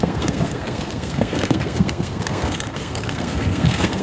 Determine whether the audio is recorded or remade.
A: remade